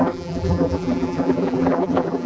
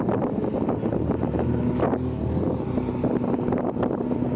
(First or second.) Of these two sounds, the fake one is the first